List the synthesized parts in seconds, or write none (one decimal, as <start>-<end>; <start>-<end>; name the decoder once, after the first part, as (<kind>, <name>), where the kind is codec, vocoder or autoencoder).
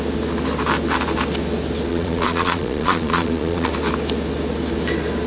1.9-3.7 (vocoder, Vocos)